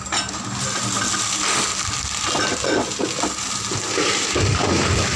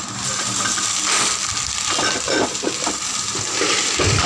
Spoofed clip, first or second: second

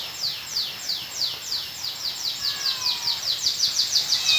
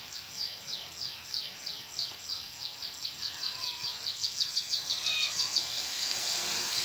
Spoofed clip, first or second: second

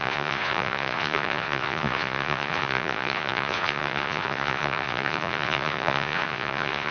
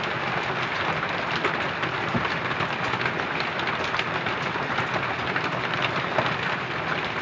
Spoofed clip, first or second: first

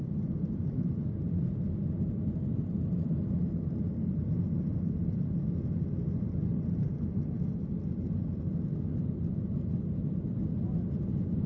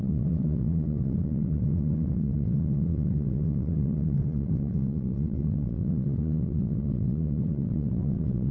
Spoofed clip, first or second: second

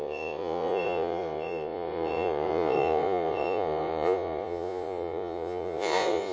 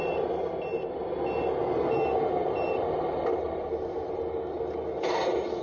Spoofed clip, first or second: first